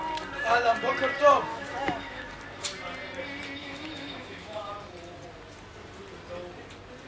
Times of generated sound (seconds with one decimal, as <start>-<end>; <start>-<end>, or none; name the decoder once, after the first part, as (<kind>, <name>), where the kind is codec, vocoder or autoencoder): 1.5-2.3 (autoencoder, DAC-VAE); 3.6-4.7